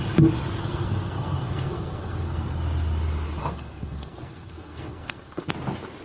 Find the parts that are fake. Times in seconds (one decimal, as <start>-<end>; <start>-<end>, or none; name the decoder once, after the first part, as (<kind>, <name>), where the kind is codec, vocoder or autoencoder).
0.6-2.6 (codec, SNAC); 3.4-5.5